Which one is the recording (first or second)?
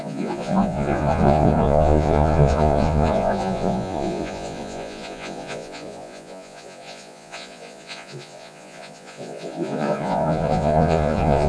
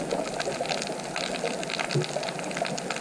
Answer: second